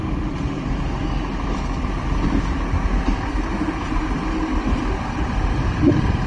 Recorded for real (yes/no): yes